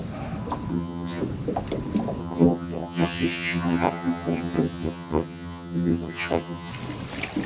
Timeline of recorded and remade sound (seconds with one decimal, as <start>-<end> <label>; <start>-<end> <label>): 0.0-0.7 recorded; 0.7-1.2 remade; 1.2-2.2 recorded; 2.2-6.7 remade; 6.7-7.5 recorded